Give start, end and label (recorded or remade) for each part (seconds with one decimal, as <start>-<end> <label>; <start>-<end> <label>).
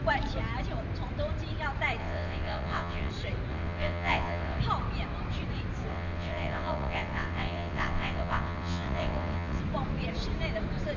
0.0-2.0 recorded; 2.0-3.1 remade; 3.1-3.5 recorded; 3.5-4.6 remade; 4.6-5.9 recorded; 5.9-9.6 remade; 9.6-11.0 recorded